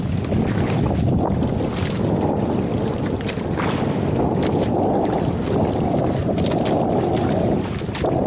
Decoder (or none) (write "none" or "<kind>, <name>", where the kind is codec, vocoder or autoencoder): none